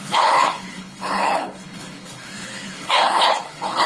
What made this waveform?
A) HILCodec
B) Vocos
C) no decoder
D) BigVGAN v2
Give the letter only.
A